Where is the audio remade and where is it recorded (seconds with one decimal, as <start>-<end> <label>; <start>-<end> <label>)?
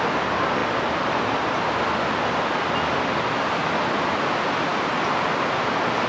0.0-6.1 recorded